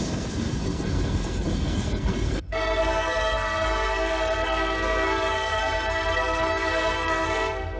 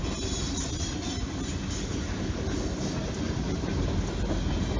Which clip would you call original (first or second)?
second